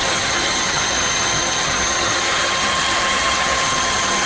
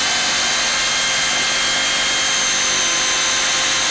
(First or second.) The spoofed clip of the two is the first